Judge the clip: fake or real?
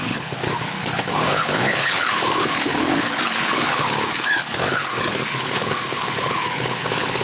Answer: fake